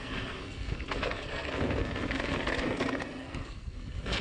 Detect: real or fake fake